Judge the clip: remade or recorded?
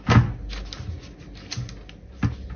recorded